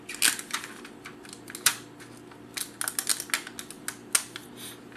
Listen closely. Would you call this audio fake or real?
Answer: real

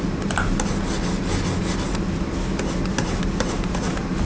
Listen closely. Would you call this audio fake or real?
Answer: real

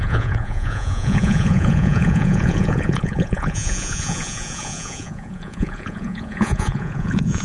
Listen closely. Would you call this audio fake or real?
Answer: fake